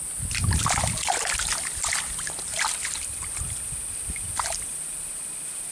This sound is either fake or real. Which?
real